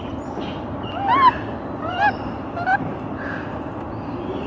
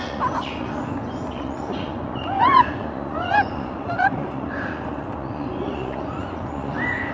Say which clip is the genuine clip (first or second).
first